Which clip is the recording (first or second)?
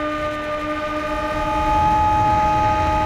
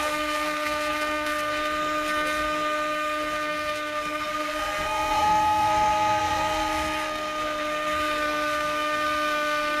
first